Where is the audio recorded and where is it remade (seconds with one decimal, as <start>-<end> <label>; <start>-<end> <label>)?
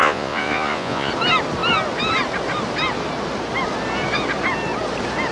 0.0-1.1 remade; 1.1-5.3 recorded